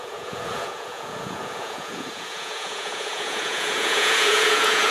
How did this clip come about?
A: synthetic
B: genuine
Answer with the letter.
A